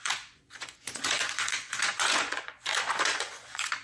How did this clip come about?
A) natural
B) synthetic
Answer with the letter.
B